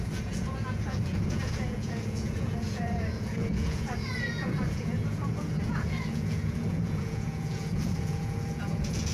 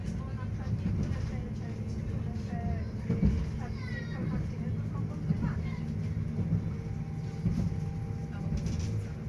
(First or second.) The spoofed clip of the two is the first